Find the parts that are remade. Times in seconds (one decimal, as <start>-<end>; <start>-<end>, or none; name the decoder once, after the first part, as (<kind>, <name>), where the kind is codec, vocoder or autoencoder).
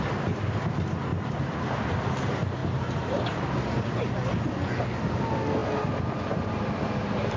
1.1-1.7 (vocoder, BigVGAN v2)